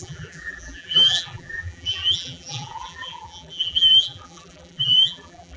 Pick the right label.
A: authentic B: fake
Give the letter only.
B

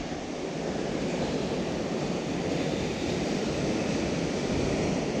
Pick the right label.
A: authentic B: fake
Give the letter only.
A